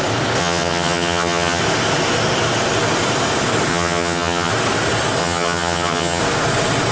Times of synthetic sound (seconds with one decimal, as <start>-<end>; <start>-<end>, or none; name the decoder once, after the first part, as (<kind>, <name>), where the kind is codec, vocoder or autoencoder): 0.4-1.6 (vocoder, HiFi-GAN); 3.7-4.5; 5.2-6.2